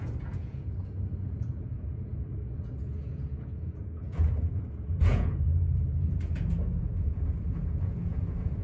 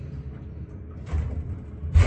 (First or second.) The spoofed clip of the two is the first